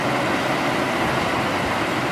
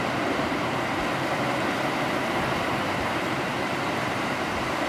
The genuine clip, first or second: first